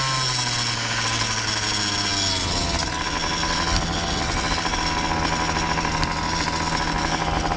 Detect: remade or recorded recorded